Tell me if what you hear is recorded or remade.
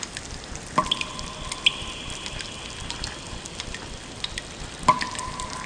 recorded